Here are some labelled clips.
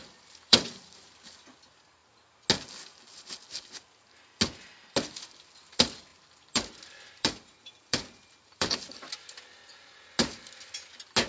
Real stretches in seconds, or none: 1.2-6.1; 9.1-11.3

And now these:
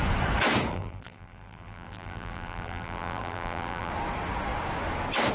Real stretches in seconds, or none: 0.0-0.7; 3.9-5.3

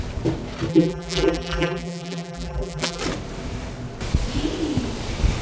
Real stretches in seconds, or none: 0.0-0.7; 3.0-5.4

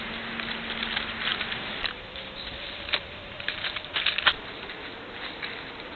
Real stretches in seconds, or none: 0.0-1.3; 4.9-6.0

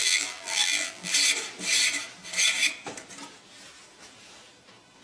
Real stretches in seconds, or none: 1.1-5.0

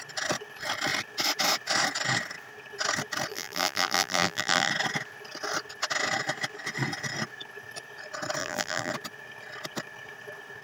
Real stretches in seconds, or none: 0.0-3.3; 4.7-8.4; 8.9-10.6

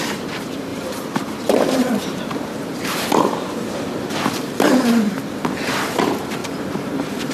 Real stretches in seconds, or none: 0.0-0.7; 5.1-6.4

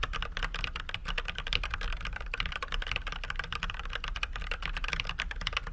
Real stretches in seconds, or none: 0.0-1.0; 4.4-5.7